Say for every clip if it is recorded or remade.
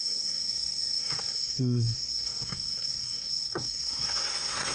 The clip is remade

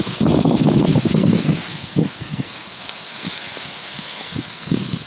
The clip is remade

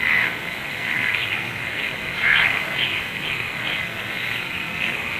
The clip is remade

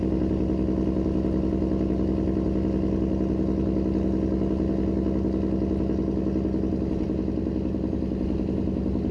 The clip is recorded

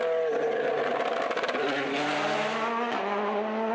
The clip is recorded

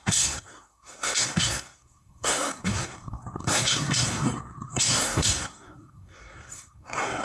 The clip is remade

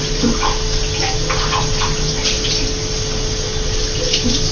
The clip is recorded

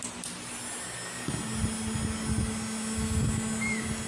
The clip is recorded